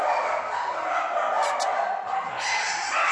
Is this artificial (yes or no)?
no